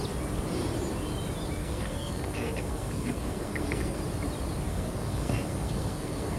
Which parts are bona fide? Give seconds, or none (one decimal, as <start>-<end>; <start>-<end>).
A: 0.0-1.6; 4.0-4.7